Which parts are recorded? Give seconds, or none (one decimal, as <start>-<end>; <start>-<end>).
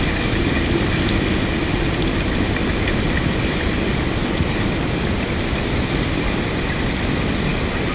0.0-7.9